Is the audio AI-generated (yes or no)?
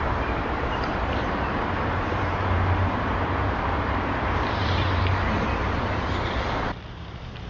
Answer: yes